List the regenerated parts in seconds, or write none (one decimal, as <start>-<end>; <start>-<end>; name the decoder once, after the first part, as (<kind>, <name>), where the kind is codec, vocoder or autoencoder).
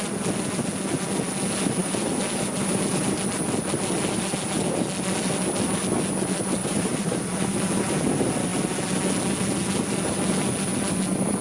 6.6-7.2 (vocoder, BigVGAN v2)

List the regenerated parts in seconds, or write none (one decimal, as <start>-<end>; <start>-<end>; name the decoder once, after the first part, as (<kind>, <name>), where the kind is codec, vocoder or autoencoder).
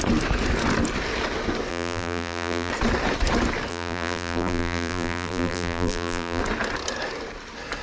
1.7-2.7 (vocoder, BigVGAN v2); 3.7-6.4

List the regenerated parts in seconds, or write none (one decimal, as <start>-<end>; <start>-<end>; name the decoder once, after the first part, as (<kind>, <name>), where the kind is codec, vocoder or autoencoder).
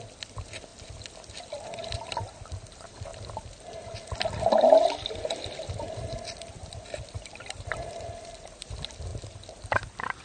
0.0-0.7 (vocoder, BigVGAN v2); 1.9-3.1; 5.7-9.1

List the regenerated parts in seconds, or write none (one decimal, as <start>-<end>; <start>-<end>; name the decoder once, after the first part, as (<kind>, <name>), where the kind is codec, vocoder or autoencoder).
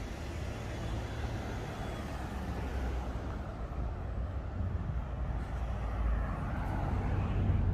none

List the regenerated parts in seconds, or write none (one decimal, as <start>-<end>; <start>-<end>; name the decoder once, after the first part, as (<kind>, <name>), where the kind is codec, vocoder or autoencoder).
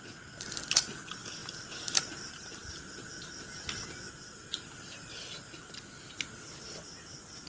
none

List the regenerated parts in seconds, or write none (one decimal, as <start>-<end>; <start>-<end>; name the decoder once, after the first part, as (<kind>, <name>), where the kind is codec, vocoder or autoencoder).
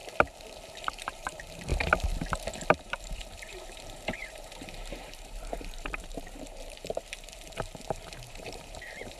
0.8-1.7 (vocoder, BigVGAN v2); 2.7-9.2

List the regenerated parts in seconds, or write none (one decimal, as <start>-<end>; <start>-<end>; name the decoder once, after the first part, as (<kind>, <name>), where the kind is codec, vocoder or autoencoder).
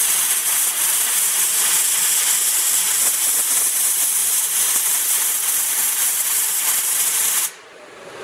0.4-1.5 (vocoder, BigVGAN v2); 4.2-4.8; 6.0-7.3